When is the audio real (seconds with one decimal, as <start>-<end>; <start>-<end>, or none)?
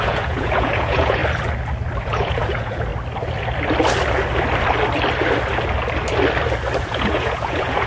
1.2-2.0; 2.9-6.8